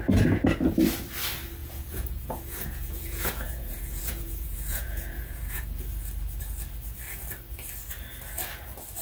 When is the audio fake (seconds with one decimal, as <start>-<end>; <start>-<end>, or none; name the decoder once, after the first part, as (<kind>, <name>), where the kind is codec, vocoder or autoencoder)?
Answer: 1.6-5.8 (vocoder, Vocos)